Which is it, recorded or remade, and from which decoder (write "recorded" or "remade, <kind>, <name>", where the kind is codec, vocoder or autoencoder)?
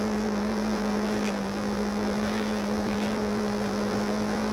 remade, vocoder, BigVGAN v2